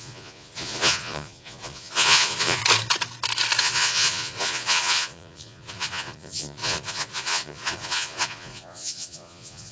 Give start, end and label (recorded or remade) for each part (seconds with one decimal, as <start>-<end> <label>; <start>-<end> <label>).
0.0-2.6 remade; 2.6-3.6 recorded; 3.6-9.7 remade

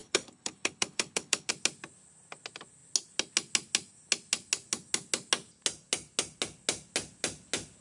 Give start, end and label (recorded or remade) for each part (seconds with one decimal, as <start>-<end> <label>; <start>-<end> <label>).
0.0-1.5 remade; 1.5-7.8 recorded

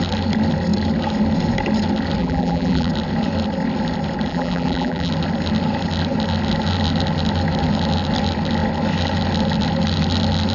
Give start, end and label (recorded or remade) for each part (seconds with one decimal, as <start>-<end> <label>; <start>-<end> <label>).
0.0-2.2 recorded; 2.2-2.9 remade; 2.9-4.3 recorded; 4.3-5.1 remade; 5.1-10.5 recorded

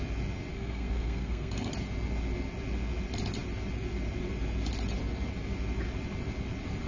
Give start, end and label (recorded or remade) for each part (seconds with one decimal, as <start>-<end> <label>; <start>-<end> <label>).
0.0-0.5 recorded; 0.5-1.7 remade; 1.7-6.9 recorded

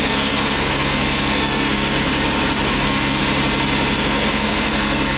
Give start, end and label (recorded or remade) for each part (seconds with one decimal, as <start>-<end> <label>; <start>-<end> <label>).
0.0-2.1 remade; 2.1-2.7 recorded; 2.7-3.2 remade; 3.2-4.0 recorded; 4.0-5.2 remade